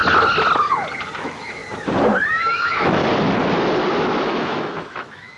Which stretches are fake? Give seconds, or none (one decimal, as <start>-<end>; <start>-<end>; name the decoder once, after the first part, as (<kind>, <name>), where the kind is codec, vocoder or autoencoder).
1.2-1.6 (autoencoder, DAC-VAE); 2.3-3.0; 4.2-5.4